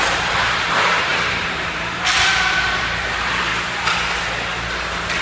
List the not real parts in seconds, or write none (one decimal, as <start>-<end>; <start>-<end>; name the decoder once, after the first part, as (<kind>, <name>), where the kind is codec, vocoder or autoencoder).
0.0-3.5 (vocoder, BigVGAN v2)